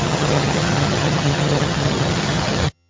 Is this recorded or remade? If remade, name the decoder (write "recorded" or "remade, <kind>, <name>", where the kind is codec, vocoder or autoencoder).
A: remade, vocoder, HiFi-GAN